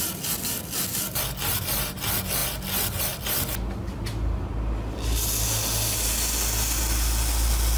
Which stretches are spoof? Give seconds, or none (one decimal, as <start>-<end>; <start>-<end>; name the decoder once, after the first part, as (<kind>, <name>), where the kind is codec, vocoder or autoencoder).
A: none